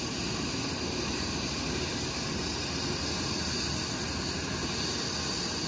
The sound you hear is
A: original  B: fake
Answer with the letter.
A